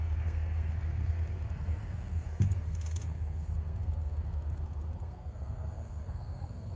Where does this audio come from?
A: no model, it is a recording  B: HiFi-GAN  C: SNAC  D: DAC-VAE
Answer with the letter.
C